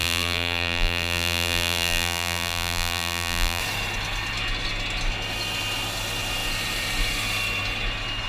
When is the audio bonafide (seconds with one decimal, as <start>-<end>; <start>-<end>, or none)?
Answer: 3.6-8.3